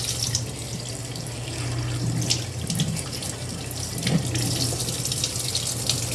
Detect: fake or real real